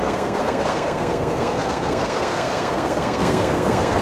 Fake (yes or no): yes